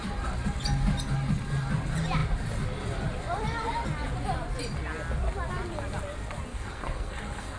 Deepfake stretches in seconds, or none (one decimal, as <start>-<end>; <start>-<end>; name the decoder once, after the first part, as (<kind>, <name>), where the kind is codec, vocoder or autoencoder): 6.5-7.6 (codec, SNAC)